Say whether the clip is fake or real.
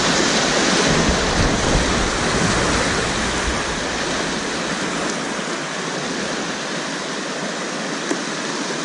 real